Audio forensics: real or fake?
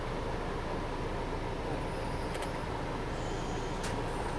real